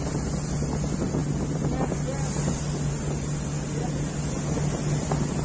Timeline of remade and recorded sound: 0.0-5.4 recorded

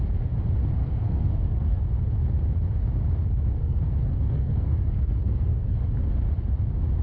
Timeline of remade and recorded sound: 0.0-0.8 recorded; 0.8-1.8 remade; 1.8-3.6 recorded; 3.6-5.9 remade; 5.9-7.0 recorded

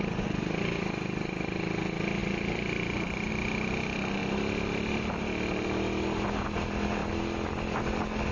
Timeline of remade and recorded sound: 0.0-8.3 recorded